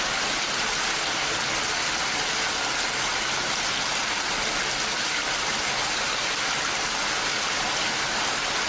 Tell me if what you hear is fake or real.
real